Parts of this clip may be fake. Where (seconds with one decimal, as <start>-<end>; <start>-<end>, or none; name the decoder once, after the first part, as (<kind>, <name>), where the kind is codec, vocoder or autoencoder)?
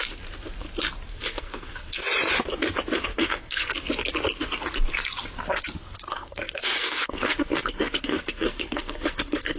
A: 1.1-1.9 (codec, SNAC); 3.1-3.7; 6.1-9.6